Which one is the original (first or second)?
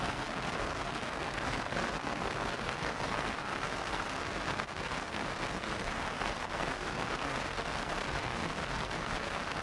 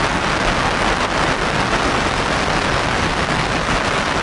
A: second